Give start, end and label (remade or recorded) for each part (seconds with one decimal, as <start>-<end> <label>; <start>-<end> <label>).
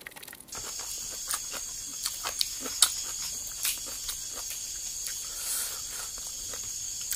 0.0-7.2 recorded